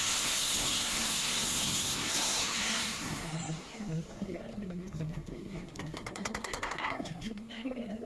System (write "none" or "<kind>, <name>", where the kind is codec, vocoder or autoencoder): codec, SNAC